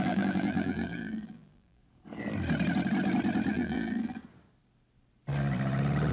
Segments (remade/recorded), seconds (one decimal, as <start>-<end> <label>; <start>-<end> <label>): 0.0-1.8 remade; 1.8-3.5 recorded; 3.5-4.2 remade; 4.2-6.1 recorded